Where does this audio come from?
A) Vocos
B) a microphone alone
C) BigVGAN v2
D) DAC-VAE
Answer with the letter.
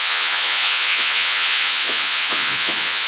A